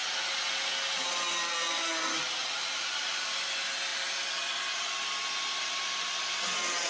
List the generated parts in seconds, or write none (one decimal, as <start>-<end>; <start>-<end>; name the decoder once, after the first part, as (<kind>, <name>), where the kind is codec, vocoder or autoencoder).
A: 2.4-3.3 (vocoder, BigVGAN v2)